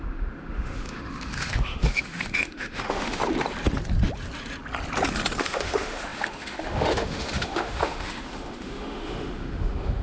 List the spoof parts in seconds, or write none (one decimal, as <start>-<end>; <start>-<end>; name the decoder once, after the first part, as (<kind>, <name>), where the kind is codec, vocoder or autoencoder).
0.0-3.2 (autoencoder, DAC-VAE); 5.4-10.0